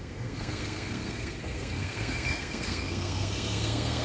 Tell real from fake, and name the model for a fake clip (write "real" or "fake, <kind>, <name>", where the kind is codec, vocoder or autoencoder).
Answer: fake, codec, SNAC